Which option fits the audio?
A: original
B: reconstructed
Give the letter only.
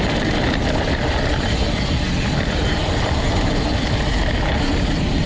A